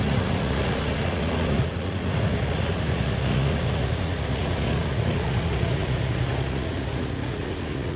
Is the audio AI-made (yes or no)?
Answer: yes